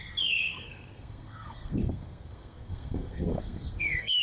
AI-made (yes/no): yes